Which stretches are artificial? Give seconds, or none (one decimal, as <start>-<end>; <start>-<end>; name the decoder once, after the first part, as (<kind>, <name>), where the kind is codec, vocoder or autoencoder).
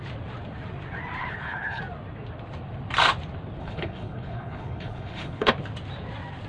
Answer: 1.2-1.8 (codec, HILCodec); 3.6-5.5